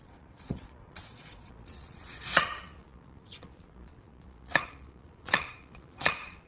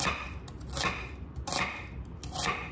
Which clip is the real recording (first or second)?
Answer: second